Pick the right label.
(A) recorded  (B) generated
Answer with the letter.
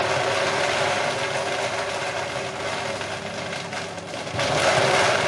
A